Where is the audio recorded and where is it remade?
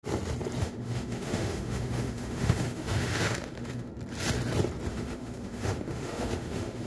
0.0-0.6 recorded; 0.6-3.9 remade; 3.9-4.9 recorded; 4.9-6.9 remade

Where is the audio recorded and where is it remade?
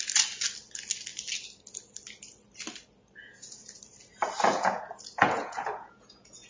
0.0-3.2 recorded; 3.2-3.8 remade; 3.8-4.5 recorded; 4.5-6.5 remade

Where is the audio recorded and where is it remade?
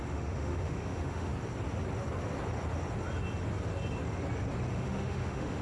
0.0-1.3 remade; 1.3-4.7 recorded; 4.7-5.6 remade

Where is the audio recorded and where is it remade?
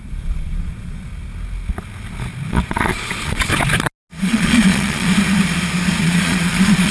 0.0-1.1 remade; 1.1-2.5 recorded; 2.5-3.5 remade; 3.5-4.2 recorded; 4.2-5.1 remade; 5.1-6.0 recorded; 6.0-6.9 remade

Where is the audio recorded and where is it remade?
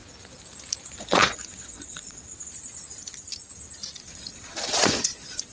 0.0-1.0 recorded; 1.0-2.3 remade; 2.3-4.0 recorded; 4.0-5.5 remade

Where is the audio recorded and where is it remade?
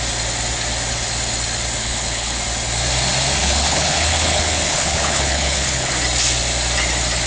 0.0-1.8 recorded; 1.8-2.4 remade; 2.4-3.4 recorded; 3.4-5.9 remade; 5.9-7.3 recorded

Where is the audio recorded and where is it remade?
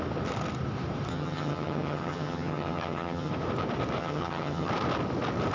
0.0-1.1 recorded; 1.1-3.3 remade; 3.3-4.0 recorded; 4.0-4.7 remade; 4.7-5.5 recorded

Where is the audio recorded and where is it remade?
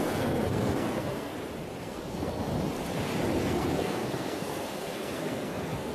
0.0-1.3 remade; 1.3-1.8 recorded; 1.8-2.5 remade; 2.5-3.4 recorded; 3.4-5.9 remade